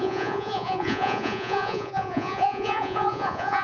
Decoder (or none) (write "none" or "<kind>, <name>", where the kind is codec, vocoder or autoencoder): vocoder, Vocos